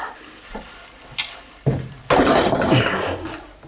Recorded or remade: recorded